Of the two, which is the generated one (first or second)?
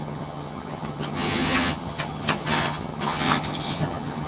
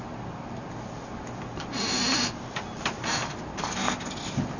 first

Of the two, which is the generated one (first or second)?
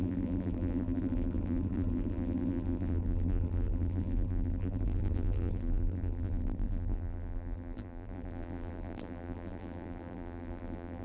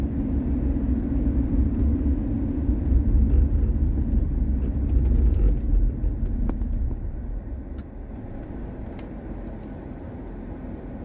first